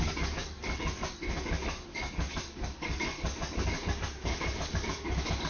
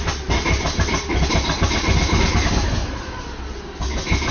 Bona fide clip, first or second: second